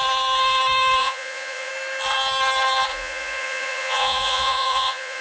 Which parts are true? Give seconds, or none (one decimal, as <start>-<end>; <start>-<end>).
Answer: 0.0-1.0; 1.7-2.9